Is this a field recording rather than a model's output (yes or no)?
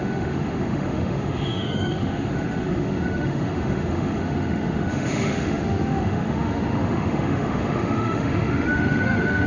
no